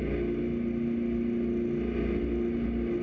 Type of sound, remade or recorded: recorded